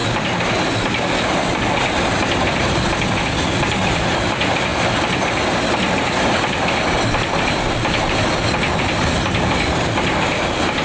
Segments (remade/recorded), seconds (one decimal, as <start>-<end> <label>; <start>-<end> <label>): 0.0-10.8 recorded